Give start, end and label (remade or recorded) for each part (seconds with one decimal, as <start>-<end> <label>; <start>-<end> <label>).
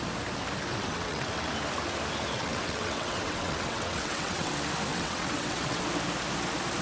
0.0-0.7 recorded; 0.7-1.5 remade; 1.5-2.3 recorded; 2.3-4.5 remade; 4.5-4.9 recorded; 4.9-5.8 remade; 5.8-6.8 recorded